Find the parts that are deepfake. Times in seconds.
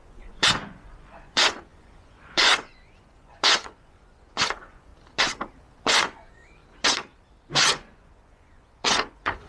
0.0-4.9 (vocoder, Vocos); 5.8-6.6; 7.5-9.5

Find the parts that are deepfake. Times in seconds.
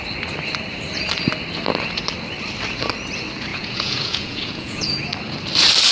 3.5-5.0 (vocoder, Vocos)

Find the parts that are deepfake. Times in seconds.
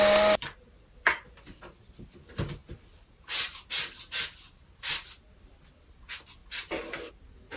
none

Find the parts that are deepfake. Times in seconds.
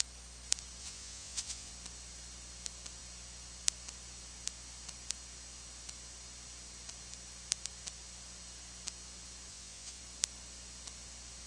0.8-1.7 (vocoder, Vocos); 9.5-10.0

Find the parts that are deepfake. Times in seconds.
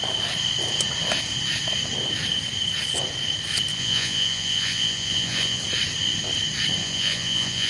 3.7-5.6 (vocoder, Vocos); 6.8-7.7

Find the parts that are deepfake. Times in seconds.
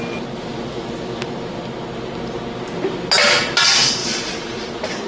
4.0-4.6 (vocoder, Vocos)